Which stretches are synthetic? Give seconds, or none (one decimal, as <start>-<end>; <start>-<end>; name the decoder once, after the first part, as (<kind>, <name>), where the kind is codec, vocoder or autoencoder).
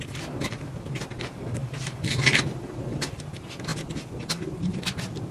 1.6-3.3 (vocoder, BigVGAN v2)